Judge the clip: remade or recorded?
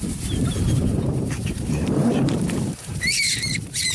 remade